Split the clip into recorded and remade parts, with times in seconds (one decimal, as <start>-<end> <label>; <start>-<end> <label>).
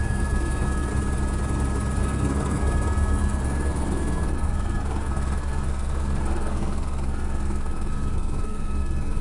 0.0-0.9 remade; 0.9-2.0 recorded; 2.0-9.2 remade